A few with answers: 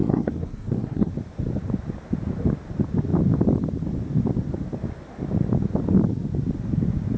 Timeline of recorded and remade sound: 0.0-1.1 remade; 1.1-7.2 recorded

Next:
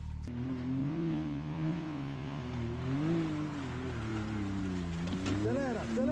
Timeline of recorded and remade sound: 0.0-0.8 recorded; 0.8-2.4 remade; 2.4-6.1 recorded

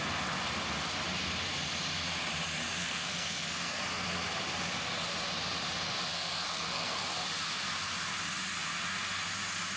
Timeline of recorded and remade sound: 0.0-2.8 recorded; 2.8-3.8 remade; 3.8-6.1 recorded; 6.1-7.0 remade; 7.0-9.8 recorded